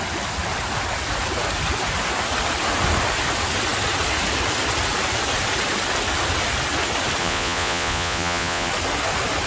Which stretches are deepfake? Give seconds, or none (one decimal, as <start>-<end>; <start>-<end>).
7.2-8.7